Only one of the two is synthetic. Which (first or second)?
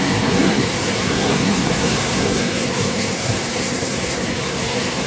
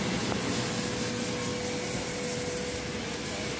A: first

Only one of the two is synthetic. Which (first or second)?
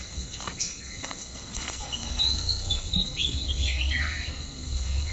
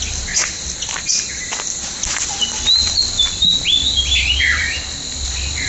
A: first